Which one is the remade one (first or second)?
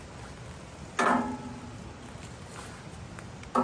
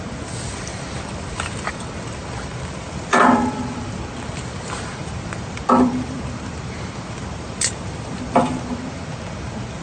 second